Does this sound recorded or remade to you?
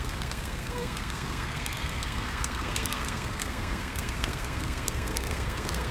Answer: remade